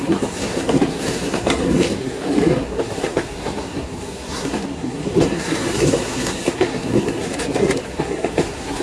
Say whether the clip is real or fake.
fake